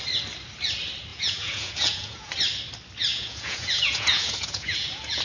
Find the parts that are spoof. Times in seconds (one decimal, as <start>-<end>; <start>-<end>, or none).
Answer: 1.1-2.3; 3.1-5.2